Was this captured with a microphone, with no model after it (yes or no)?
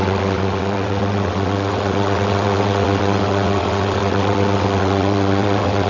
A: no